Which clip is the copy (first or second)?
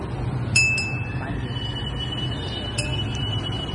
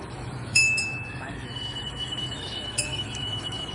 second